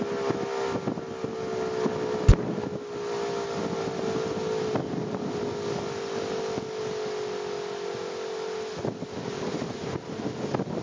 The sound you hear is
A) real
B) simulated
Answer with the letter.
A